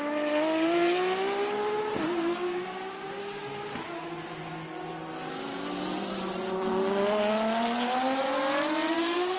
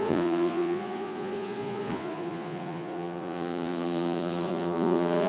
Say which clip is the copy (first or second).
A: second